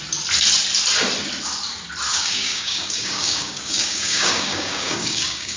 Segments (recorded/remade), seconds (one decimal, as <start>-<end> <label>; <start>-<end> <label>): 0.0-2.1 recorded; 2.1-5.6 remade